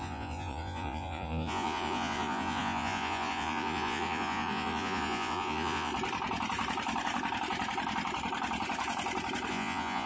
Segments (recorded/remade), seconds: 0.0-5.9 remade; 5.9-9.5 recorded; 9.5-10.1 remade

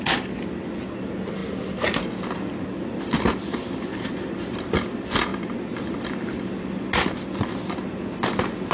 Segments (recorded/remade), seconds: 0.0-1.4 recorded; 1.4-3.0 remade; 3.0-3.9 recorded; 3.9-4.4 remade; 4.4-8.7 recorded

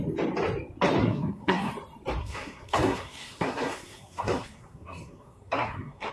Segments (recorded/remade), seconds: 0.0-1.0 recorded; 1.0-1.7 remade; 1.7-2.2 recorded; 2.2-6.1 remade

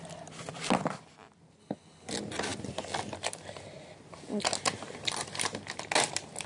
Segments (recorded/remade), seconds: 0.0-1.6 recorded; 1.6-2.1 remade; 2.1-6.5 recorded